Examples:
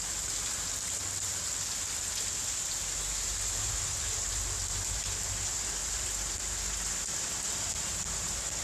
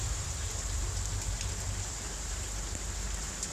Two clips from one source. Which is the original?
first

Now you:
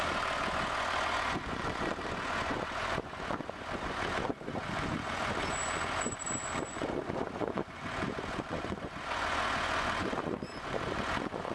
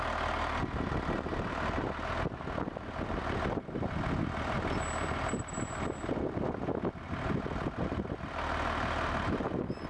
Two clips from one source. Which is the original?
second